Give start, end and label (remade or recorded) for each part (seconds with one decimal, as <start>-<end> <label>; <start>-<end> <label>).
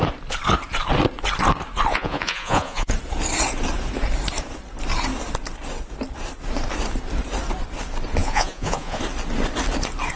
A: 0.0-1.9 recorded; 1.9-2.9 remade; 2.9-8.2 recorded; 8.2-9.0 remade; 9.0-10.2 recorded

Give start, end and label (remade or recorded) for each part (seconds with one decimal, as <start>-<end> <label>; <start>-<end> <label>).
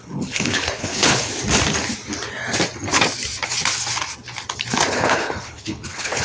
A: 0.0-1.3 remade; 1.3-4.9 recorded; 4.9-6.2 remade